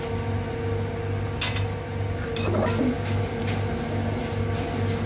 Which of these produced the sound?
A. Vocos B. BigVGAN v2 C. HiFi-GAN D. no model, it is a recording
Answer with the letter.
D